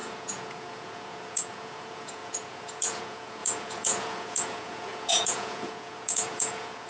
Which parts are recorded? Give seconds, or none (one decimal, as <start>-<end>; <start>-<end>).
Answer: none